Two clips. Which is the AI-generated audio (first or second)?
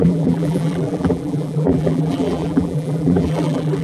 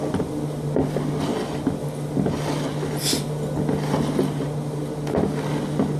first